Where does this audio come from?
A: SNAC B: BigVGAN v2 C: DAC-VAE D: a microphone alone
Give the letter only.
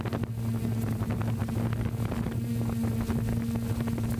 D